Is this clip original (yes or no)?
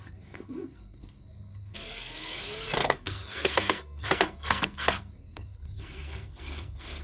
no